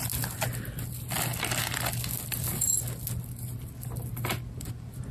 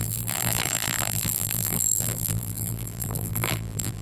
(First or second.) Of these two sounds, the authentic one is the first